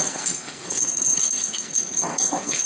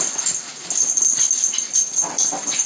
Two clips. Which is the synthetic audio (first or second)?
first